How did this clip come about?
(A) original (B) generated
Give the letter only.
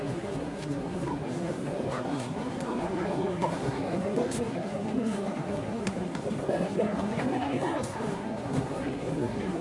B